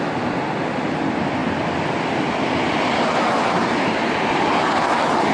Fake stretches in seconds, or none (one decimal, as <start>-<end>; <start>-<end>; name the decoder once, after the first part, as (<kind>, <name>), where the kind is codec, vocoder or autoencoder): none